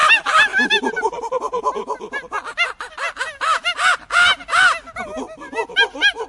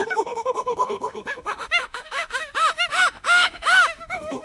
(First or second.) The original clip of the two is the first